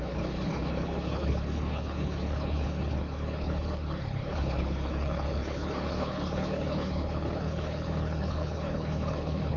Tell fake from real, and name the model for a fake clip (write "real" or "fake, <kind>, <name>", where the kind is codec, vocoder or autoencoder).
fake, codec, HILCodec